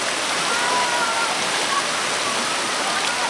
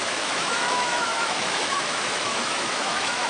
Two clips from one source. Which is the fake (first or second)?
second